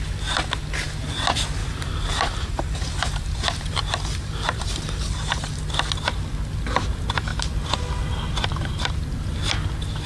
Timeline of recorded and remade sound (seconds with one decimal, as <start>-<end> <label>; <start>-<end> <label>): 0.0-1.6 recorded; 1.6-5.4 remade; 5.4-10.1 recorded